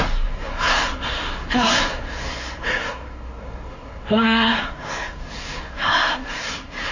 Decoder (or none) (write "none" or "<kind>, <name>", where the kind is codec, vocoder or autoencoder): codec, SNAC